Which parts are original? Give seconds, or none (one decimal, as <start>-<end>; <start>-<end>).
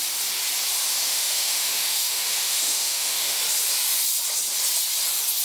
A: 0.0-1.1; 3.4-5.4